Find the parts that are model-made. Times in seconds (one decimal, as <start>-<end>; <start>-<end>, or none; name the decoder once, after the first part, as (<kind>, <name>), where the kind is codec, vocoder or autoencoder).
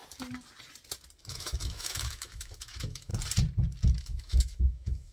1.2-3.1 (autoencoder, DAC-VAE); 4.0-5.1